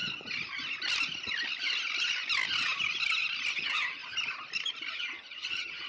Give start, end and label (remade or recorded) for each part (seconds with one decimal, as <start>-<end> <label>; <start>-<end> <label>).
0.0-3.5 recorded; 3.5-4.0 remade; 4.0-4.9 recorded; 4.9-5.9 remade